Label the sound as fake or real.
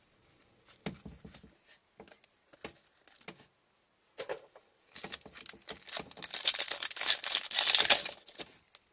real